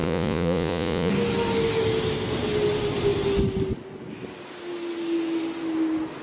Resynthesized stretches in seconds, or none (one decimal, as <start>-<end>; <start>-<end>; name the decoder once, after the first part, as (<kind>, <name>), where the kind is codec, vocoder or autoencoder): 0.0-1.1 (vocoder, Vocos)